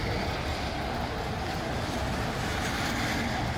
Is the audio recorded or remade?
recorded